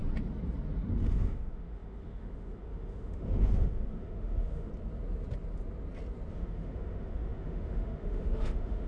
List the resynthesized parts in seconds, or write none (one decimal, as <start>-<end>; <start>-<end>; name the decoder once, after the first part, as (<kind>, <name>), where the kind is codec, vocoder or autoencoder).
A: 1.1-4.7 (autoencoder, DAC-VAE); 6.3-8.9